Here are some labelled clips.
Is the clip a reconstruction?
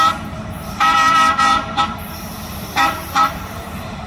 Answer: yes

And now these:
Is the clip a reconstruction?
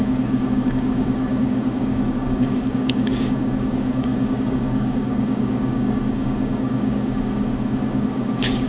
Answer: yes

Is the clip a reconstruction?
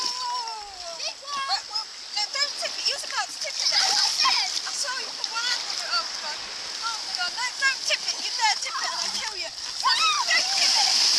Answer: no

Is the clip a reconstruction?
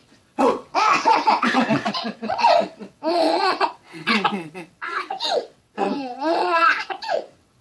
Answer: yes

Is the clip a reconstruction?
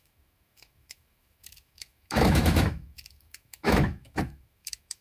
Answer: yes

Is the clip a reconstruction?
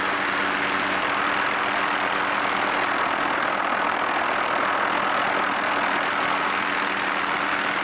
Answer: no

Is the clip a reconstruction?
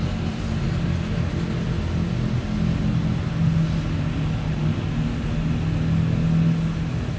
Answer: no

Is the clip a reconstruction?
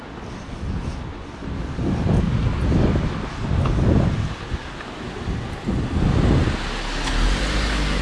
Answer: no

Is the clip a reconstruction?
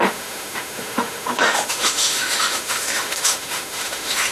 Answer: yes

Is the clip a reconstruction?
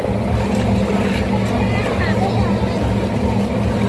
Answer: no